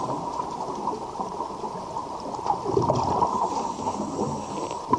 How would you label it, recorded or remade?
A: recorded